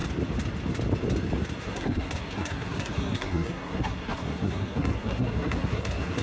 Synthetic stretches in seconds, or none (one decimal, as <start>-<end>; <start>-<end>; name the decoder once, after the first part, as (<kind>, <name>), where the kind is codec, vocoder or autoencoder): 1.6-6.2 (codec, SNAC)